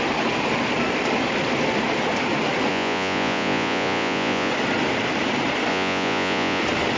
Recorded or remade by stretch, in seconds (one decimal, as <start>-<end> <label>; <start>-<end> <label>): 0.0-2.7 recorded; 2.7-4.5 remade; 4.5-5.7 recorded; 5.7-6.6 remade; 6.6-7.0 recorded